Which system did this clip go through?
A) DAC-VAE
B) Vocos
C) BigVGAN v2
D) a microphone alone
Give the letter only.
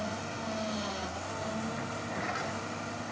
D